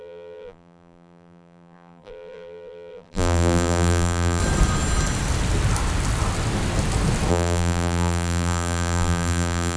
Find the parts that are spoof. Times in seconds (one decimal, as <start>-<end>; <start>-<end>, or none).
0.0-4.4; 7.3-9.8